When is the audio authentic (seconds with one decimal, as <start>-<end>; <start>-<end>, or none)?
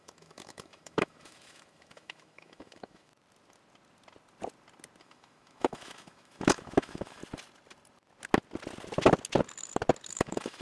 3.1-5.0; 7.2-10.1